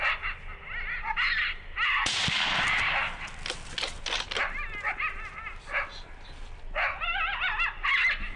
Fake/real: real